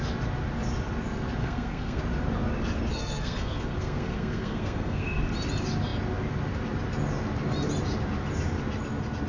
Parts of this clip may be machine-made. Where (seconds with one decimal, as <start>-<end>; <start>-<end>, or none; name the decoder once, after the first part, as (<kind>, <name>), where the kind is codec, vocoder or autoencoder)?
1.4-2.0 (codec, SNAC); 2.9-5.2